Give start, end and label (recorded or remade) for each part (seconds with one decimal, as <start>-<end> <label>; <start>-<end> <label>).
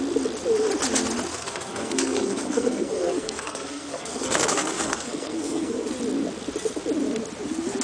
0.0-1.3 recorded; 1.3-5.9 remade; 5.9-7.8 recorded